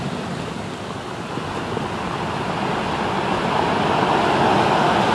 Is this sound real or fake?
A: real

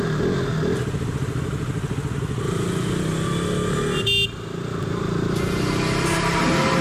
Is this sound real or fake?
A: real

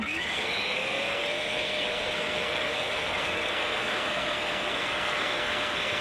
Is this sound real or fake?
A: fake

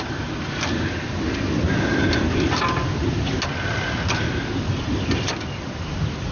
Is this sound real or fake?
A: real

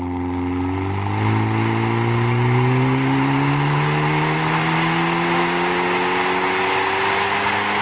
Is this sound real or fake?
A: real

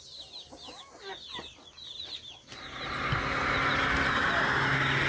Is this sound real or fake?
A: real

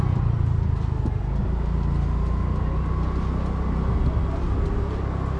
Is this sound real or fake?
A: real